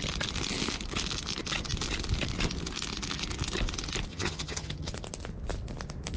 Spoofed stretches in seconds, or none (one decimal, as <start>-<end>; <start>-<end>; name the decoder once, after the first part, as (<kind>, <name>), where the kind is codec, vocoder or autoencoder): 4.1-4.9 (vocoder, HiFi-GAN)